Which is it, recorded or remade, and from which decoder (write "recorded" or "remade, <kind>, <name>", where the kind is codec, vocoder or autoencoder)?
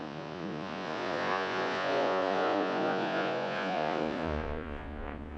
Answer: remade, vocoder, Vocos